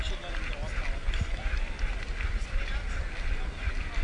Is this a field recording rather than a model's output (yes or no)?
yes